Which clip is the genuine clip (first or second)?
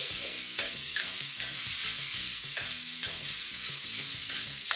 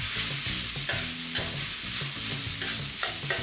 second